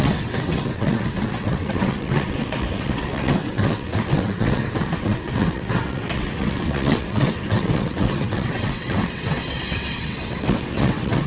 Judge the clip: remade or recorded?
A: remade